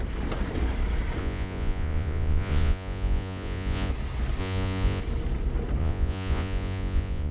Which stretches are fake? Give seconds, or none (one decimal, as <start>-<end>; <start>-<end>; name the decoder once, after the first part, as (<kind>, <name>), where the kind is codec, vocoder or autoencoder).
1.2-3.9 (vocoder, Vocos); 4.4-5.0; 5.8-7.3